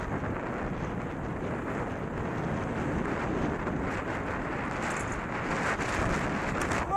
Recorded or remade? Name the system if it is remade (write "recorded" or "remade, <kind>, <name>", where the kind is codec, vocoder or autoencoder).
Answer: recorded